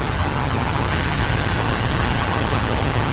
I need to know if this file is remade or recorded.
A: remade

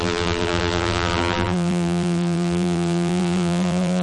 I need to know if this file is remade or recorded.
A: remade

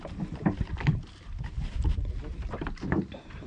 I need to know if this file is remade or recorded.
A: recorded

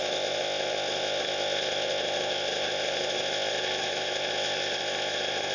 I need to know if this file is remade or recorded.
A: remade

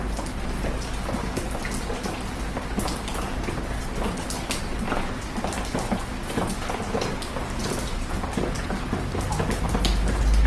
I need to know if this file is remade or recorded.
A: recorded